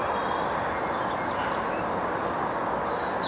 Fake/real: real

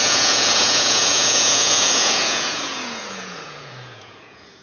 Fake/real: fake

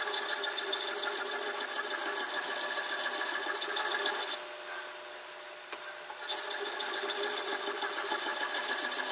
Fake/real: real